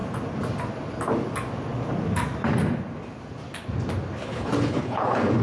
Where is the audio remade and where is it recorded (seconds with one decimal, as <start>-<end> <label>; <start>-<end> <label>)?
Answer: 0.0-4.2 recorded; 4.2-5.4 remade